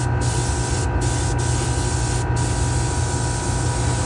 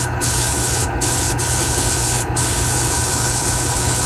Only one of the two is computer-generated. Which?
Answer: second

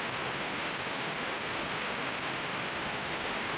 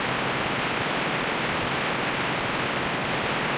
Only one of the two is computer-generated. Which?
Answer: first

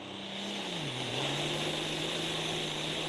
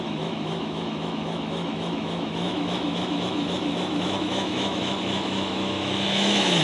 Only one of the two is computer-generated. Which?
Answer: second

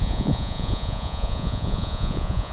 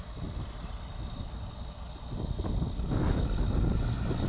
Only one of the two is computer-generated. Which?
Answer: first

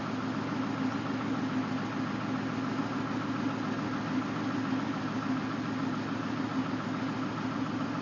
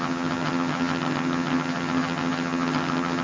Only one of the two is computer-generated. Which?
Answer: second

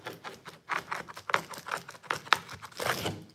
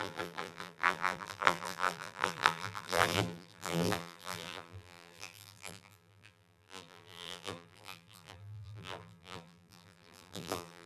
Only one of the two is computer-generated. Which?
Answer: second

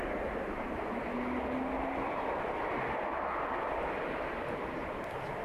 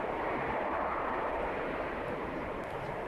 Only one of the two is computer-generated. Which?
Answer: second